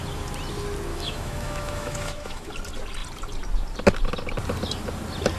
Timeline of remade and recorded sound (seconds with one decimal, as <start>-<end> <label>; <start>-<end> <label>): 0.0-0.9 recorded; 0.9-2.5 remade; 2.5-5.4 recorded